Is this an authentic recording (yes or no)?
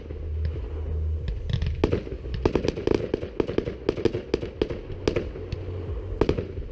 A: yes